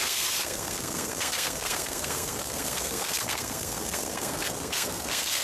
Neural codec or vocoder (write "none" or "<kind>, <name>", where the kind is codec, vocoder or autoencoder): codec, SNAC